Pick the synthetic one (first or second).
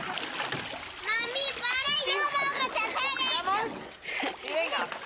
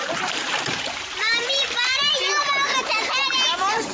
second